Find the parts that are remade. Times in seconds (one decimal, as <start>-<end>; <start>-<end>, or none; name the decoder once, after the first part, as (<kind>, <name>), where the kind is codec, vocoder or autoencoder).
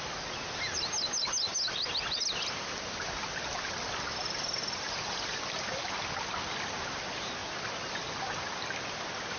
none